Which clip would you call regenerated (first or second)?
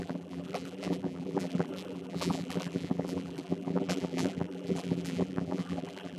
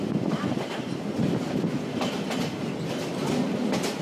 first